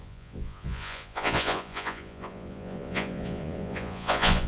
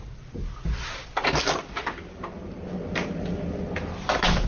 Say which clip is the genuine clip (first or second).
second